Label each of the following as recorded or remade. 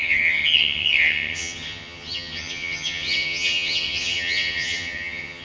remade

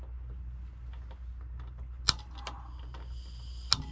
recorded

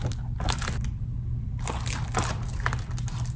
recorded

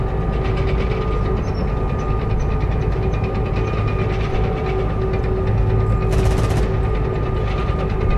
recorded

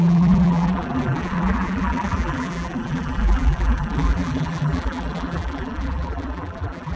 remade